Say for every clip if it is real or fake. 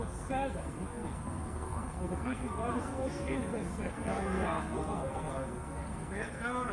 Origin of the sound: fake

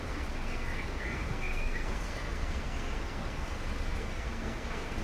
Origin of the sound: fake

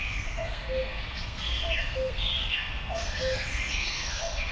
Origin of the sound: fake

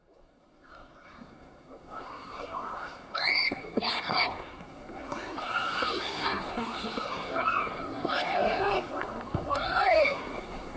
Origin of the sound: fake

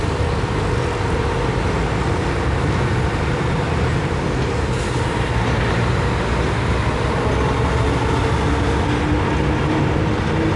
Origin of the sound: real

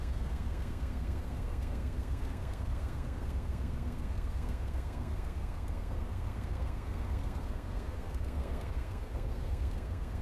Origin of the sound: fake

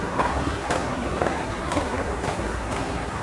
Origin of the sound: fake